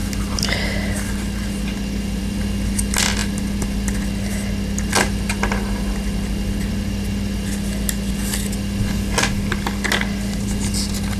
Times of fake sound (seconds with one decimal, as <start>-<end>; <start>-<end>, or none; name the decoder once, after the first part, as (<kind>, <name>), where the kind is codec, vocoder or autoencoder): none